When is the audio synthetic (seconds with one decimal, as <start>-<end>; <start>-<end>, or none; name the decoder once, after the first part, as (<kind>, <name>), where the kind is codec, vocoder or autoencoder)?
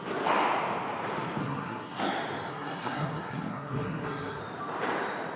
1.4-2.1 (codec, SNAC); 2.5-4.4